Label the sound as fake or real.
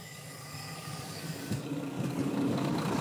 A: fake